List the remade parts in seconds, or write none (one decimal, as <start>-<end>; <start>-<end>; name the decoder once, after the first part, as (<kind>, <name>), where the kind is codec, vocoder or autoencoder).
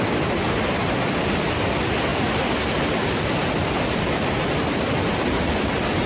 none